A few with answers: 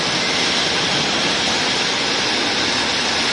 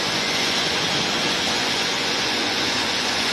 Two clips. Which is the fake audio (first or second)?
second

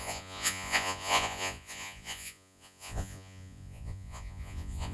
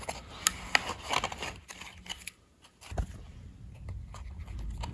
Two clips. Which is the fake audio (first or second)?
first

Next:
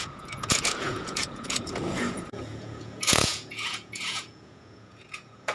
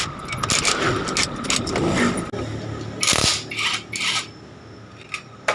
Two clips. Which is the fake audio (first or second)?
first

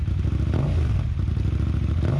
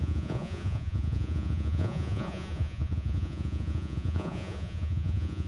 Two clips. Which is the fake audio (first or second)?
second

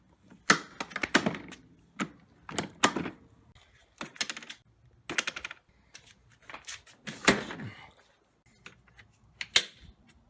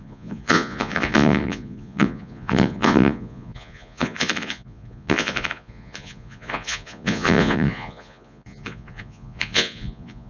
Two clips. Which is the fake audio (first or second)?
second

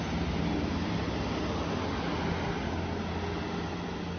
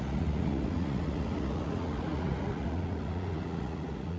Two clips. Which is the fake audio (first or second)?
second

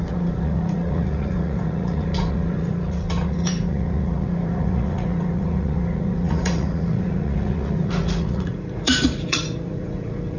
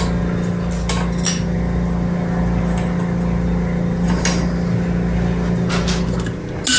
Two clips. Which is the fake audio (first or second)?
first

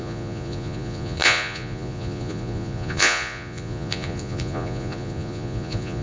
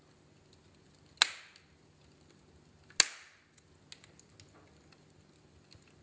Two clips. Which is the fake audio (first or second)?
first